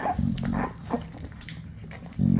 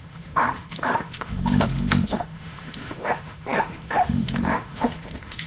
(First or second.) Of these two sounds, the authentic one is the first